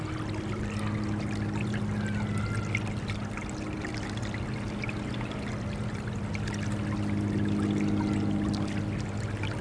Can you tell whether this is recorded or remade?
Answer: recorded